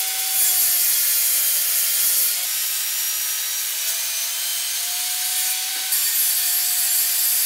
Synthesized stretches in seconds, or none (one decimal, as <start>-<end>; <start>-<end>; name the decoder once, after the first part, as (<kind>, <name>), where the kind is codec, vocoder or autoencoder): 1.6-3.1 (vocoder, BigVGAN v2)